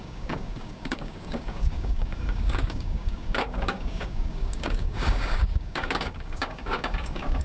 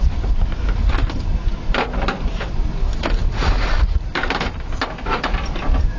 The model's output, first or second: first